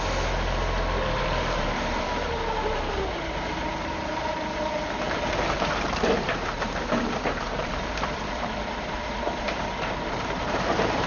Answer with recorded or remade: remade